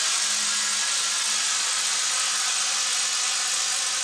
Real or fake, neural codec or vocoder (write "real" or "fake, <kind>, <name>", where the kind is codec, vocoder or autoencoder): real